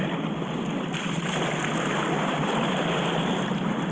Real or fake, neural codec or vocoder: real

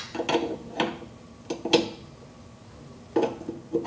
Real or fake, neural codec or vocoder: real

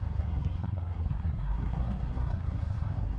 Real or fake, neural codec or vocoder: fake, codec, SNAC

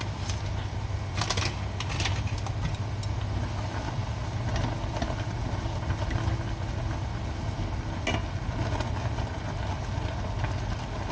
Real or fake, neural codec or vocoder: real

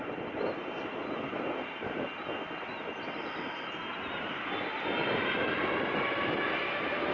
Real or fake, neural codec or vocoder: real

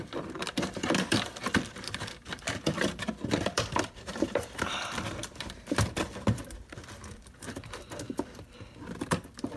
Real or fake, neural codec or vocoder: fake, vocoder, BigVGAN v2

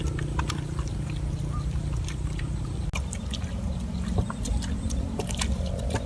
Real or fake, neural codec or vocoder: real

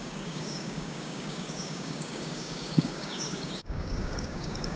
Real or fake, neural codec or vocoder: fake, codec, DAC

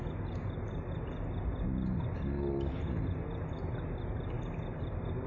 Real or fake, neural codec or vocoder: real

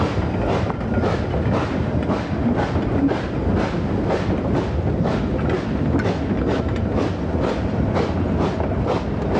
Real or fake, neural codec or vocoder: real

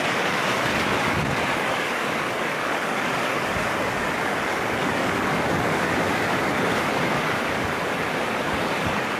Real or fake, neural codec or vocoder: fake, codec, DAC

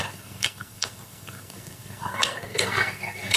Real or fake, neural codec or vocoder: fake, codec, SNAC